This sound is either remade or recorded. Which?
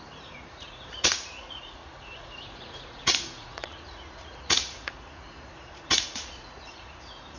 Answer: remade